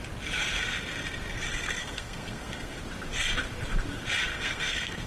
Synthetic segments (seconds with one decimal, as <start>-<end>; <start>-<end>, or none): 1.8-2.8; 4.3-5.1